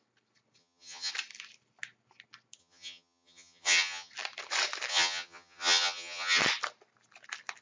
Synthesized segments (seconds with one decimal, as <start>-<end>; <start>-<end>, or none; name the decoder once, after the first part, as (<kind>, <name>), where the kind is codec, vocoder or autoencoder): 0.6-1.1 (vocoder, HiFi-GAN); 2.6-4.1; 4.9-6.4